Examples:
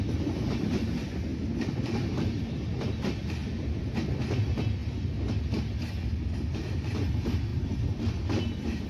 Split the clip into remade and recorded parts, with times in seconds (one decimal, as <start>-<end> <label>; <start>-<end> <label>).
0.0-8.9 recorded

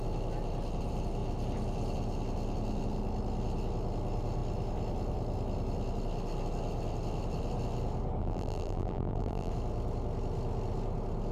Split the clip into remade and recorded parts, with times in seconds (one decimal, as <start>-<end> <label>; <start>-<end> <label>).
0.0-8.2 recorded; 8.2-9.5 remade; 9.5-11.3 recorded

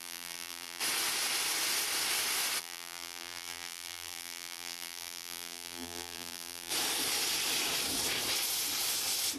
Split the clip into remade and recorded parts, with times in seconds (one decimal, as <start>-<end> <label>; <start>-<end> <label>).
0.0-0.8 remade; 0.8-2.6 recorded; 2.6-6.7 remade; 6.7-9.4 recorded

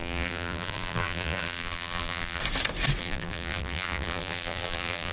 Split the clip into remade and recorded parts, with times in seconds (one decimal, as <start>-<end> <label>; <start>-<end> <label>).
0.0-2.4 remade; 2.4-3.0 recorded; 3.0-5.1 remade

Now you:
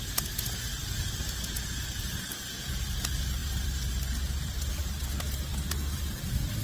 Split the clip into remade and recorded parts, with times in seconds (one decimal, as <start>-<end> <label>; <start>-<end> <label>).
0.0-6.6 remade

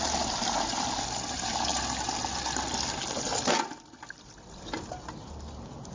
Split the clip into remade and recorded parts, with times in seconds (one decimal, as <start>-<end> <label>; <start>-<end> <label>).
0.0-5.9 recorded